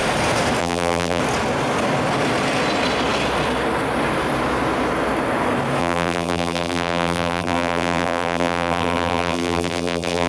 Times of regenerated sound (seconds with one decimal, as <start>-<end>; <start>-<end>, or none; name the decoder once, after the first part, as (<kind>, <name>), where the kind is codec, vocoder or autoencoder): 0.6-1.2 (vocoder, BigVGAN v2); 5.8-10.3